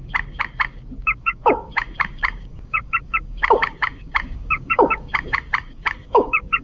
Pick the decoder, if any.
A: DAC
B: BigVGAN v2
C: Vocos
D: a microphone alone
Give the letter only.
A